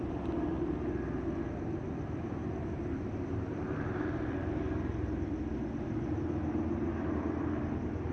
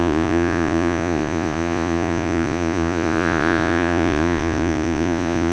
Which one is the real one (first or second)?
first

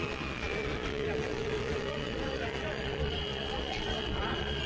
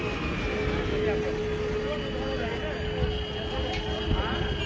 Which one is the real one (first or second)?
second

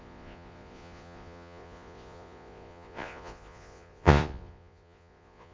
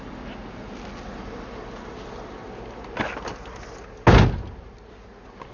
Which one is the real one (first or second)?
second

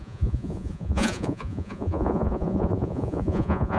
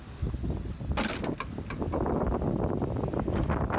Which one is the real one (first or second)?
second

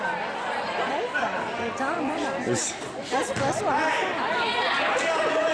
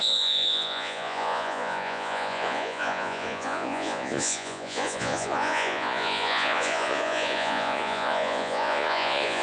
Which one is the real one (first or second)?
first